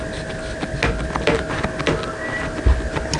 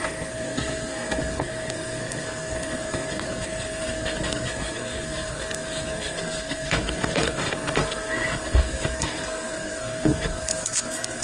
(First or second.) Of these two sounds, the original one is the first